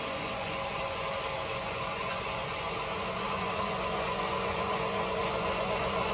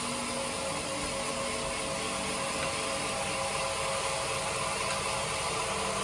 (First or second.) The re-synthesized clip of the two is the first